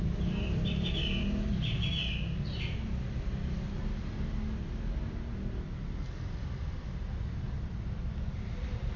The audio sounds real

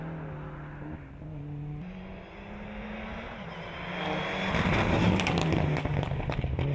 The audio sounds real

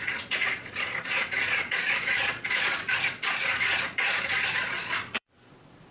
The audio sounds fake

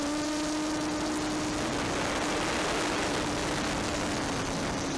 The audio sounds real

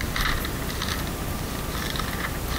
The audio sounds real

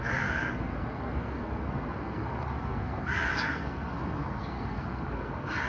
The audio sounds fake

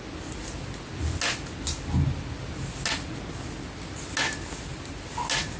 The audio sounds real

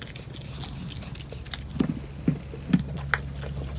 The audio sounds real